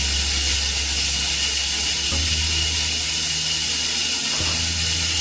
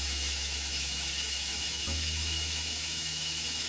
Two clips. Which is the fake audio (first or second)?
second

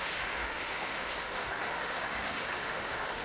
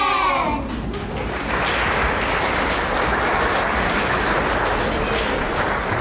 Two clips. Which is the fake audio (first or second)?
first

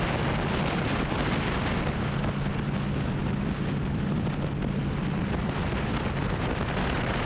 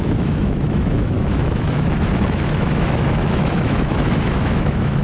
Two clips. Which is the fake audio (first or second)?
second